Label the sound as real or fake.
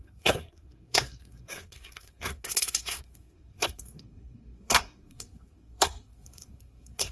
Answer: fake